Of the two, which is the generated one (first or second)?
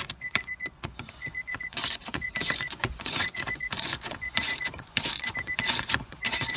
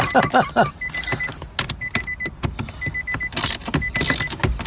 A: first